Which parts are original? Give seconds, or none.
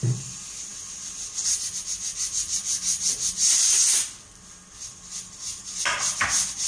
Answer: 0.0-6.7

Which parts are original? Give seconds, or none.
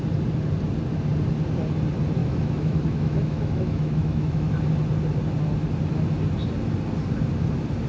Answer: 0.0-2.2; 4.5-7.9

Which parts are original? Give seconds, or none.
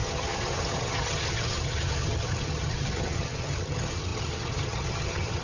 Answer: none